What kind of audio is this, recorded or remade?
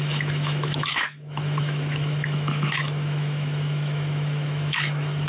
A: remade